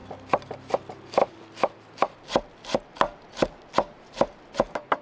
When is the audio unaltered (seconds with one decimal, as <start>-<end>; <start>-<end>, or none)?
0.0-5.0